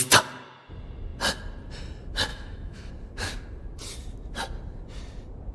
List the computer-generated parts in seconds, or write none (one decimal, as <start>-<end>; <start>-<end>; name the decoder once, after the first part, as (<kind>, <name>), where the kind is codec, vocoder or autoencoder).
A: 2.3-2.9 (autoencoder, DAC-VAE)